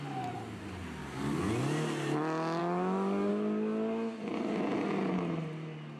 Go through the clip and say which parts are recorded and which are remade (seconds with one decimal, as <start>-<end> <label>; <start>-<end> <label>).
0.0-1.0 recorded; 1.0-1.5 remade; 1.5-2.6 recorded; 2.6-3.3 remade; 3.3-6.0 recorded